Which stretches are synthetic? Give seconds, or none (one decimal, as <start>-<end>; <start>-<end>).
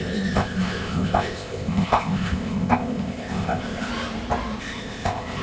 0.0-3.9; 4.6-5.4